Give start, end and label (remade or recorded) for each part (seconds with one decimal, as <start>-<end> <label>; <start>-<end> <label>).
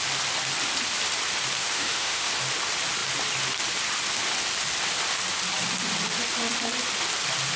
0.0-1.6 recorded; 1.6-2.3 remade; 2.3-7.6 recorded